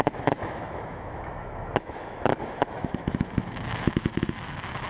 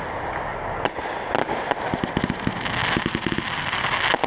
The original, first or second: second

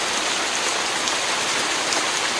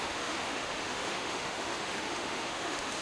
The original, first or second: first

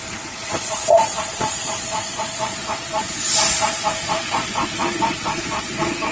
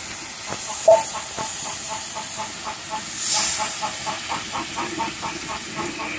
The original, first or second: second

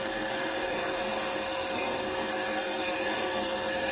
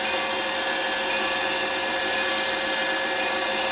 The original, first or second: second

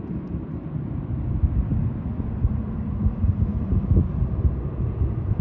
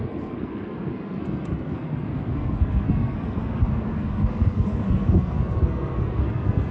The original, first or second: first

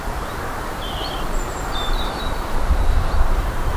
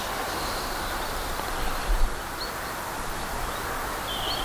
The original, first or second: second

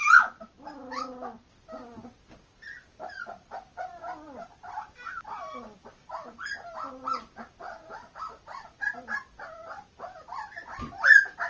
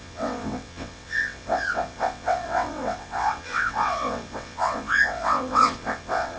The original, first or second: first